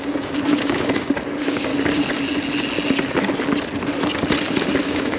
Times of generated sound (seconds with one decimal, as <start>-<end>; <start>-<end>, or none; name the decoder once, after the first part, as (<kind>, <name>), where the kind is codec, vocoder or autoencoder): 0.0-1.7 (codec, DAC); 4.8-5.2